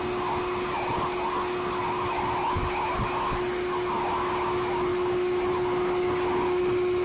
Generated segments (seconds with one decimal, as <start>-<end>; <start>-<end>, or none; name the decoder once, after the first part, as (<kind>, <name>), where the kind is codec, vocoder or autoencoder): none